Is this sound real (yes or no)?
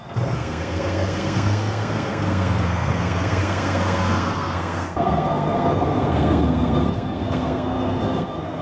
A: no